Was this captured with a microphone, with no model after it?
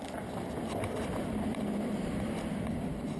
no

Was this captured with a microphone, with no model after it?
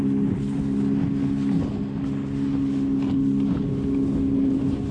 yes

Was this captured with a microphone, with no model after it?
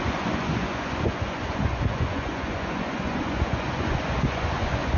no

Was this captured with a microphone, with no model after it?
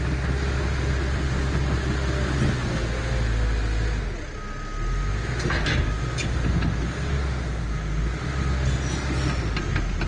yes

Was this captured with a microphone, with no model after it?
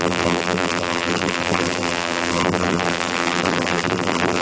no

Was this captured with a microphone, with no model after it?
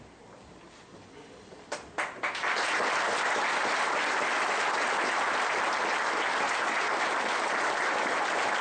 yes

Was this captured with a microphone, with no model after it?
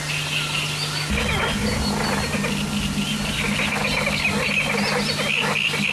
yes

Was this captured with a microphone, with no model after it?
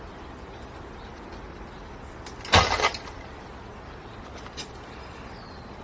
yes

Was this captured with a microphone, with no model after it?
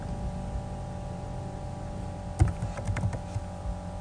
yes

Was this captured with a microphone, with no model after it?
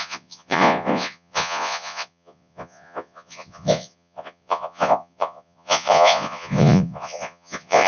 no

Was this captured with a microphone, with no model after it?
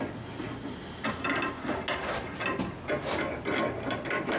yes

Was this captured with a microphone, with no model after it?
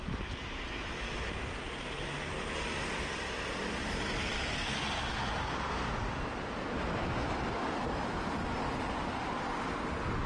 yes